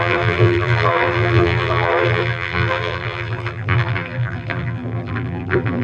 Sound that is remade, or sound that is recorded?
remade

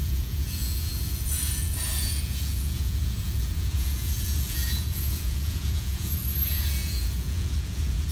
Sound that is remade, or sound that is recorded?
remade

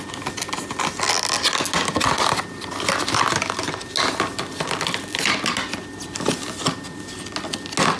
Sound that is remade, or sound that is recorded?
recorded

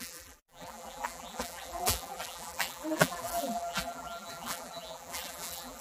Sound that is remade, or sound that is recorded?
remade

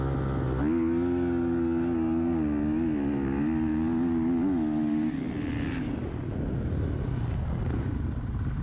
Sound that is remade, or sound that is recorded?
recorded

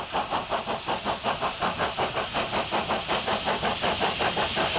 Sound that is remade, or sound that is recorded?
recorded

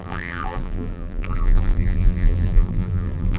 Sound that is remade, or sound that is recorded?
remade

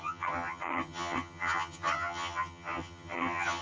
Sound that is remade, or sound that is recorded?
remade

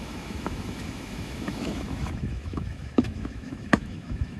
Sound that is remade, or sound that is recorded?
remade